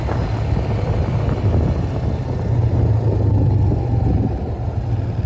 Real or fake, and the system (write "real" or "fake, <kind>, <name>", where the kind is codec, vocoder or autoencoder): real